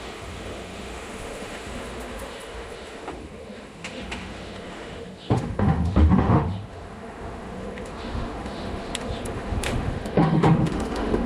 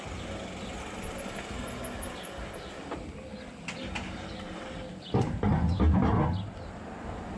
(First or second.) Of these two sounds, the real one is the second